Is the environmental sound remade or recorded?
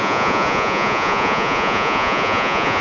remade